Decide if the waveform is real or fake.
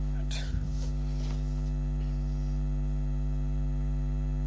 real